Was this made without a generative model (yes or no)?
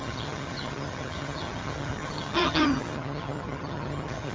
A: no